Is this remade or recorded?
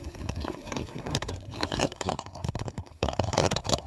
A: remade